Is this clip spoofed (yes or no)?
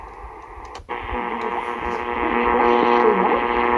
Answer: no